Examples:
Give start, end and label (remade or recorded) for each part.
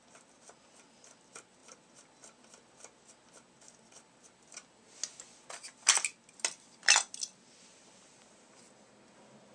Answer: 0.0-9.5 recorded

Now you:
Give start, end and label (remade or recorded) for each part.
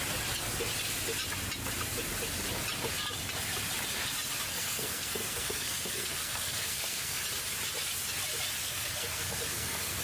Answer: 0.0-4.5 recorded; 4.5-7.2 remade; 7.2-8.6 recorded; 8.6-10.0 remade